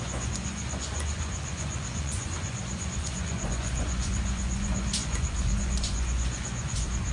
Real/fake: fake